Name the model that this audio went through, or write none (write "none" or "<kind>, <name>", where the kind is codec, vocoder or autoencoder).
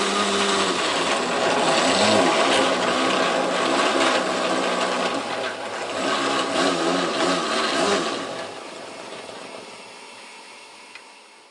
none